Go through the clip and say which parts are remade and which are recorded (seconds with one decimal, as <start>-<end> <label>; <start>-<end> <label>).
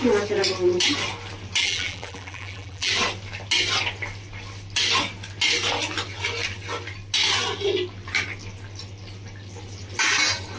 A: 0.0-1.6 recorded; 1.6-2.9 remade; 2.9-10.6 recorded